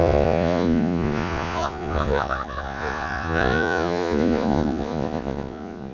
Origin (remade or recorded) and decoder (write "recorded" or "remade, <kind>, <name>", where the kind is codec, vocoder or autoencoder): remade, vocoder, Vocos